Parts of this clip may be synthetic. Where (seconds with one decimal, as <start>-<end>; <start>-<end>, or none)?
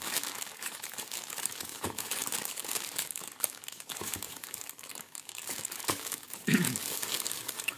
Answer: 0.0-7.8